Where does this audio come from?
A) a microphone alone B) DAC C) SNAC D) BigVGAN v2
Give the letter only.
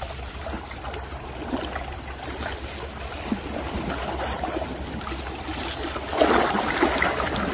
A